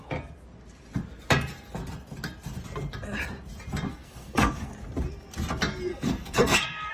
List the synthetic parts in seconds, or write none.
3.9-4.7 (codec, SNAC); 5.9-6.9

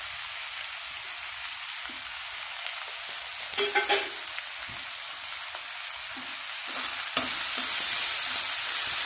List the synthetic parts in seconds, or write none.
none

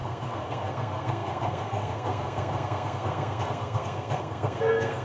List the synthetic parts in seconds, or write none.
0.0-5.0 (codec, SNAC)

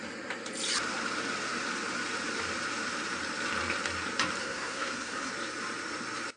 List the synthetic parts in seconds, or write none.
4.4-5.3 (codec, SNAC)